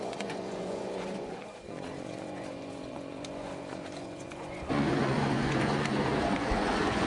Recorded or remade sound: remade